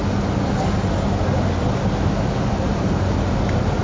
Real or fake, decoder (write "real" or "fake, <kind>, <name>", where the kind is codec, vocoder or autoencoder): real